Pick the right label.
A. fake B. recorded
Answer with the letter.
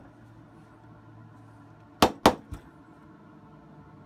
B